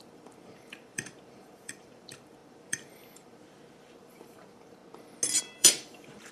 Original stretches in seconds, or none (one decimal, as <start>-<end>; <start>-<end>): 4.8-5.4